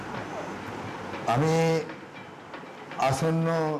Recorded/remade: recorded